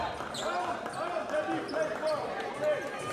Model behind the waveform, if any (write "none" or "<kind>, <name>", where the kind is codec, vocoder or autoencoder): none